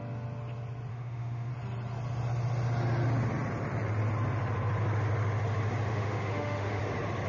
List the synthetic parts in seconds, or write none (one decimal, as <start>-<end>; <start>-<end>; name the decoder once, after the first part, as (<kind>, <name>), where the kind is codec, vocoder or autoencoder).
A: 0.9-1.5 (autoencoder, DAC-VAE); 5.9-6.8